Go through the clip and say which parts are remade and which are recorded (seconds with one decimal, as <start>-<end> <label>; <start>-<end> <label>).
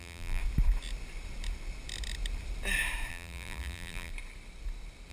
0.0-0.4 remade; 0.4-3.1 recorded; 3.1-4.1 remade; 4.1-5.1 recorded